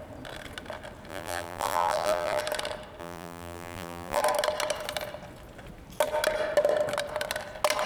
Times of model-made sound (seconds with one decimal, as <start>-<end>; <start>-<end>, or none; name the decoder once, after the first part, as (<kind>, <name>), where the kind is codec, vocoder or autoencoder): 1.1-2.4 (vocoder, BigVGAN v2); 3.0-4.2